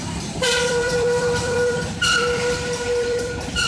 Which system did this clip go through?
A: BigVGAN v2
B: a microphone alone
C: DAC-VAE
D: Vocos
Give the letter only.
A